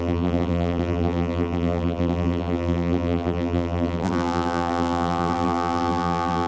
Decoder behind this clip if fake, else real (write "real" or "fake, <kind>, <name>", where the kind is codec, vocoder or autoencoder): fake, vocoder, BigVGAN v2